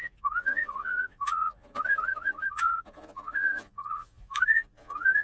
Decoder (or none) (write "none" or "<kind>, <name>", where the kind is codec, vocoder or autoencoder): vocoder, Vocos